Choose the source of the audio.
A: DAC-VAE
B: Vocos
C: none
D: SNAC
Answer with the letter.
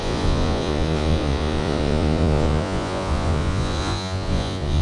B